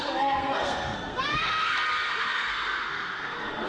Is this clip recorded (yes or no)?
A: no